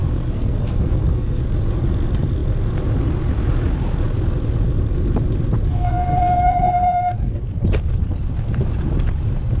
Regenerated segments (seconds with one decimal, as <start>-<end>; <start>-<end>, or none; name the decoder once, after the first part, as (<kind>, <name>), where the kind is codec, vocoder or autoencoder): 0.0-1.4 (codec, SNAC); 5.7-7.4

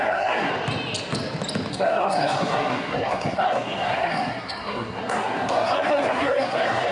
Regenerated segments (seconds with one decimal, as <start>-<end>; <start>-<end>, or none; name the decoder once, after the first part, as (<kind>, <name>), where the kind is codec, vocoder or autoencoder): 0.0-0.5 (codec, SNAC); 1.7-6.9

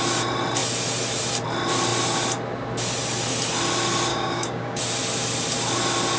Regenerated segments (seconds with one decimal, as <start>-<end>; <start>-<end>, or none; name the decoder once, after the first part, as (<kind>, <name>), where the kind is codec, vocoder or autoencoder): 4.1-4.8 (codec, DAC)

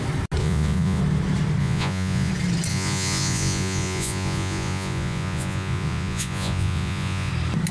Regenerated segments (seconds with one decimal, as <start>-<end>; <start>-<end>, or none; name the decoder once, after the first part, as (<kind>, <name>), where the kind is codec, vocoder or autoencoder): 0.4-1.0 (vocoder, Vocos); 1.6-2.3; 2.7-7.3

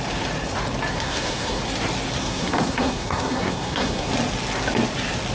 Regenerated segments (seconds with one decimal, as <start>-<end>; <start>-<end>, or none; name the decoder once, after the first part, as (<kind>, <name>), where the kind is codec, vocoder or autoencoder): 0.9-1.6 (codec, SNAC); 2.2-4.1

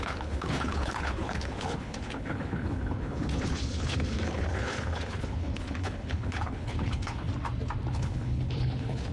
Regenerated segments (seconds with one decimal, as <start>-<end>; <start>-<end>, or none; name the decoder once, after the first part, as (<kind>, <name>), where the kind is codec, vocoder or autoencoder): 0.0-7.3 (codec, HILCodec); 7.9-9.1

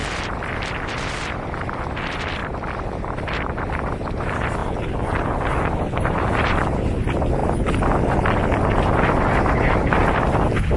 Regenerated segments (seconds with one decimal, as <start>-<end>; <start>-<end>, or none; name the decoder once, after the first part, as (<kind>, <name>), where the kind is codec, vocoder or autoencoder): 0.0-2.4 (vocoder, BigVGAN v2); 3.0-7.4; 8.7-10.8